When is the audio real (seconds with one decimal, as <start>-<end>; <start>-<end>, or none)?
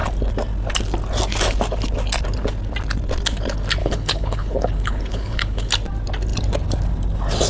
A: 0.0-3.8; 5.7-7.5